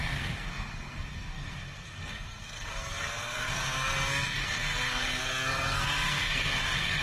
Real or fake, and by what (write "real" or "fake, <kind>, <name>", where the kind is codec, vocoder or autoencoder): fake, codec, SNAC